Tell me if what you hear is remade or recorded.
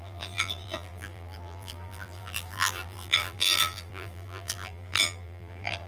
remade